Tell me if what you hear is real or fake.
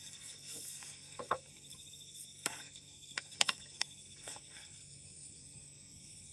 fake